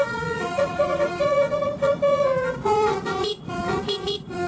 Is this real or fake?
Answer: fake